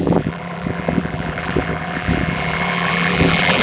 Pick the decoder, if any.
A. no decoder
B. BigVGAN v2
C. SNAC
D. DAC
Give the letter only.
B